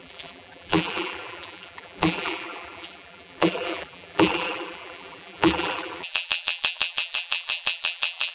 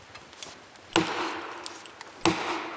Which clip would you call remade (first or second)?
first